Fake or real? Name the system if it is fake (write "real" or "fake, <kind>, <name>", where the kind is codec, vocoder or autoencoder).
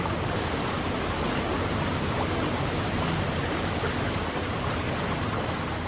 real